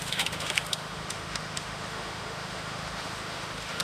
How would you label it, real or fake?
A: fake